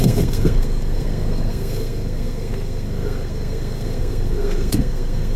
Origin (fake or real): fake